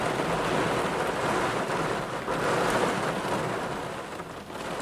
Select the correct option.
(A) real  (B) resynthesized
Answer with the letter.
A